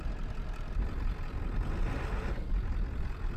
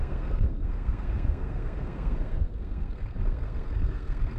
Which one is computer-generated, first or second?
second